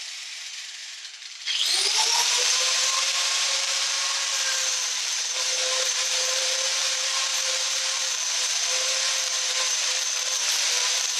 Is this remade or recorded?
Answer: remade